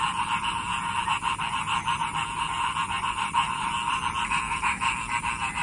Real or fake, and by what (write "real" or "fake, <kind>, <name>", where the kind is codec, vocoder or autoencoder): real